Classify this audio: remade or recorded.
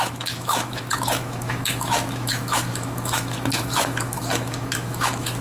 remade